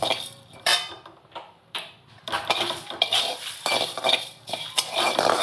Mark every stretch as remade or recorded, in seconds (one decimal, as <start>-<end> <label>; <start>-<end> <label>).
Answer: 0.0-5.4 remade